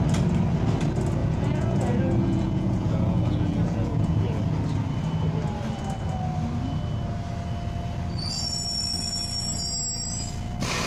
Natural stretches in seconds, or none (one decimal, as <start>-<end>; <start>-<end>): 0.0-1.2; 4.4-10.9